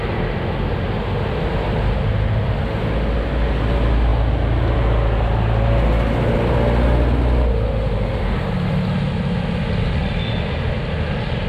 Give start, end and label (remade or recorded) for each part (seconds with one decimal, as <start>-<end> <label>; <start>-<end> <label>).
0.0-11.5 recorded

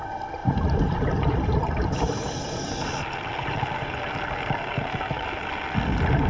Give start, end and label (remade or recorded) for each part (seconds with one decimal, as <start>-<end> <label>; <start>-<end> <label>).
0.0-6.3 recorded

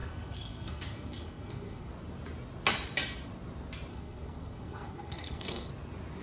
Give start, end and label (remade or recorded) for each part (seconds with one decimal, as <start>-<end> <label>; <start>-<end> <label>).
0.0-1.9 remade; 1.9-3.9 recorded; 3.9-5.7 remade; 5.7-6.2 recorded

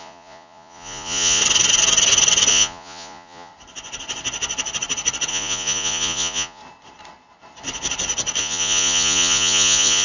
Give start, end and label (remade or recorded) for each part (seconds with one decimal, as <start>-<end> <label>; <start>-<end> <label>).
0.0-1.4 remade; 1.4-2.5 recorded; 2.5-3.5 remade; 3.5-5.3 recorded; 5.3-6.6 remade; 6.6-8.4 recorded; 8.4-10.0 remade

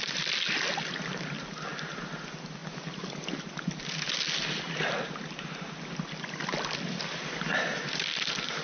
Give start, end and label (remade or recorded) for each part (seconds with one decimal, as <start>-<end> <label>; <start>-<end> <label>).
0.0-8.6 recorded